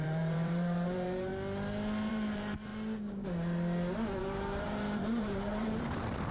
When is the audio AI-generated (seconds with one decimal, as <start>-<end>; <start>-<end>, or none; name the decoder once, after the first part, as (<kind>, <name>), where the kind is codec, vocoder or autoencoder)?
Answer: 0.0-1.3 (vocoder, BigVGAN v2); 2.1-2.7; 4.2-6.3